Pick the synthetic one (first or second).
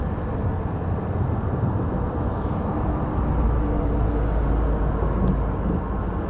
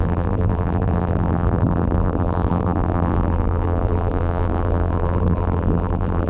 second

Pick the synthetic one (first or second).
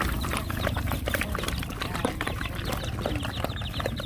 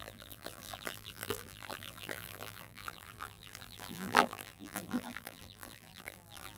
second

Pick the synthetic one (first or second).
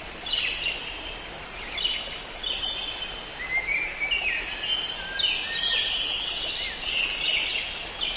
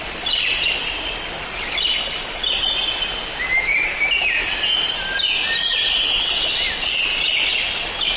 second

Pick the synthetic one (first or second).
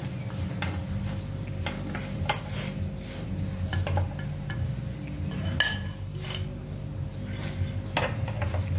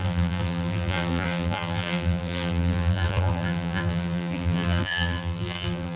second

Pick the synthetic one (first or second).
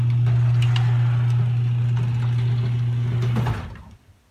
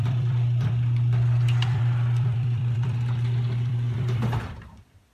second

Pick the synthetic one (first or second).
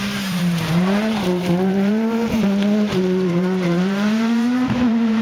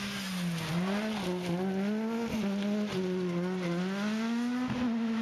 first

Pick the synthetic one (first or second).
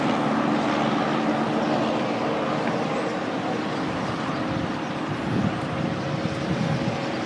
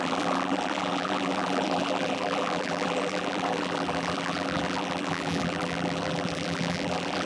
second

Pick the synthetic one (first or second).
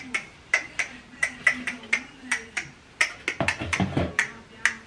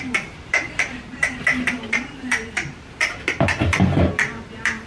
second